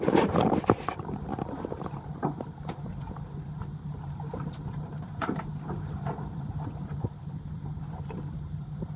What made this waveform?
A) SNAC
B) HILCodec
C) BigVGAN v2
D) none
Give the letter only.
C